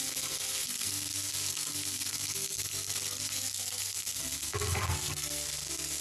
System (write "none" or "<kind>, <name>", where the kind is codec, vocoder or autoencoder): codec, SNAC